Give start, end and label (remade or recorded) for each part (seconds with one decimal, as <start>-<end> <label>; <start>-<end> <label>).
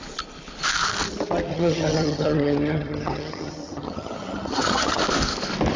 0.0-1.5 recorded; 1.5-5.0 remade; 5.0-5.8 recorded